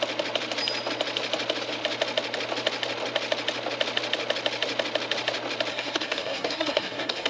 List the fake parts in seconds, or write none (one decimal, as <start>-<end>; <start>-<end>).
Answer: 5.7-7.3